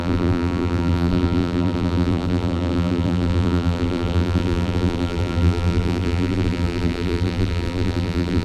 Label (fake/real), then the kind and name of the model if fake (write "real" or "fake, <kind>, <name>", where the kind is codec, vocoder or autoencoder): fake, vocoder, BigVGAN v2